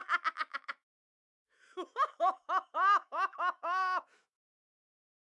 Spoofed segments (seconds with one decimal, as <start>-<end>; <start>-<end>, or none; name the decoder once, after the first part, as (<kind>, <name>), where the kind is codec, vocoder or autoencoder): 0.0-5.3 (autoencoder, DAC-VAE)